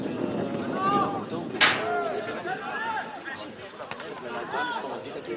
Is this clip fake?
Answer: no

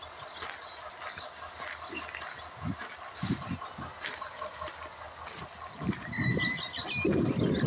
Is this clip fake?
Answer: no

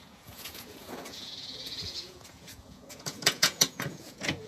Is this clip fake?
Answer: yes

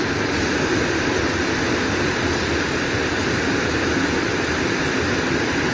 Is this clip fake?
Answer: no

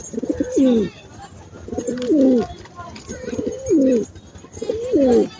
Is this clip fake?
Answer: no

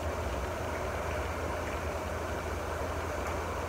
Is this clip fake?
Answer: no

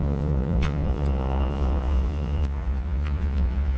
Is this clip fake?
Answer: yes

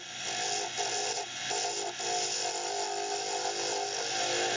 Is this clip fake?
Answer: no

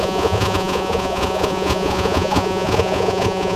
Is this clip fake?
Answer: yes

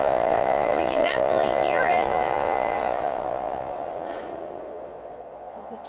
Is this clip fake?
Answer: yes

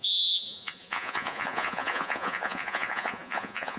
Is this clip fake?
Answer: yes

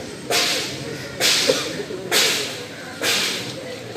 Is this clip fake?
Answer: no